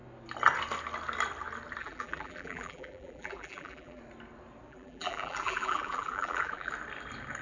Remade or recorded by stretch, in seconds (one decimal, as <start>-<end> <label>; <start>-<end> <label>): 0.0-1.8 recorded; 1.8-4.0 remade; 4.0-4.7 recorded; 4.7-6.7 remade; 6.7-7.4 recorded

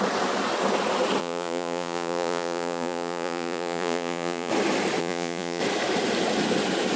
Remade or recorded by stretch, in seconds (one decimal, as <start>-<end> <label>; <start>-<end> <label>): 0.0-1.2 recorded; 1.2-4.5 remade; 4.5-5.0 recorded; 5.0-5.6 remade; 5.6-7.0 recorded

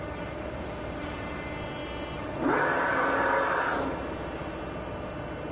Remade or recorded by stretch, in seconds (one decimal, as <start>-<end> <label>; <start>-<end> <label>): 0.0-5.5 recorded

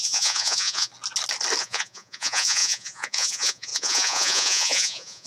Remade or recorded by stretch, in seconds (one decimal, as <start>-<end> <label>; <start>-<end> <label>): 0.0-0.9 remade; 0.9-1.6 recorded; 1.6-5.3 remade

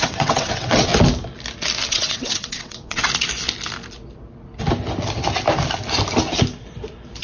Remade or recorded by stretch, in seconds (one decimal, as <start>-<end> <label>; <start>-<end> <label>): 0.0-0.9 remade; 0.9-1.9 recorded; 1.9-3.0 remade; 3.0-7.2 recorded